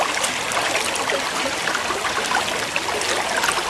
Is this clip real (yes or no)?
yes